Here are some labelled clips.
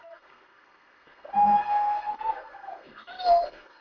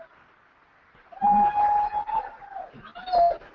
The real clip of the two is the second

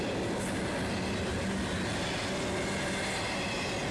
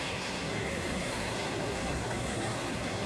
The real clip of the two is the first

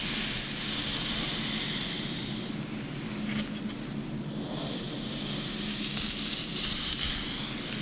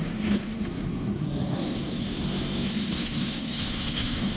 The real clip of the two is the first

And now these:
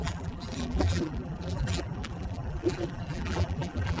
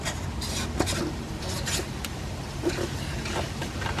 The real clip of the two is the second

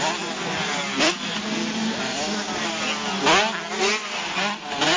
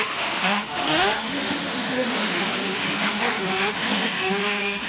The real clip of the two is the first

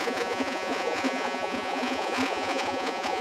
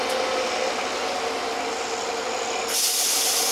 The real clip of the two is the second